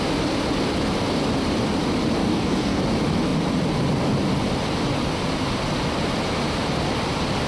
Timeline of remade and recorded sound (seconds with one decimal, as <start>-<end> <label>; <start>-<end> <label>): 0.0-2.2 recorded; 2.2-2.8 remade; 2.8-7.5 recorded